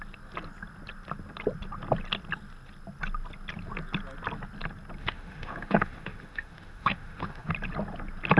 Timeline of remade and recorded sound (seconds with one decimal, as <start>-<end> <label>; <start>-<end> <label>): 0.0-5.0 recorded; 5.0-7.5 remade; 7.5-8.4 recorded